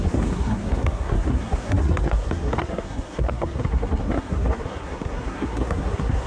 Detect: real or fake fake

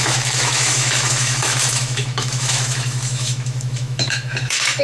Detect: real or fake fake